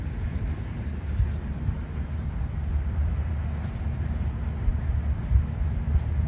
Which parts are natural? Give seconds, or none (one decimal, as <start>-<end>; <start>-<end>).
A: 0.0-2.7; 3.3-6.3